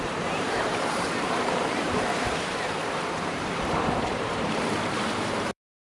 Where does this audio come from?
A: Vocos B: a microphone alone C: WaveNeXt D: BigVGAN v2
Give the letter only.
D